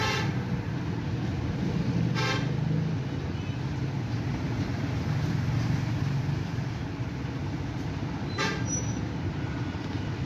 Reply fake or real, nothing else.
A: real